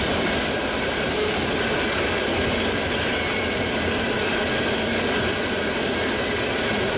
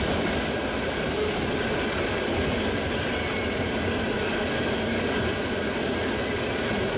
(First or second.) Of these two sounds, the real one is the first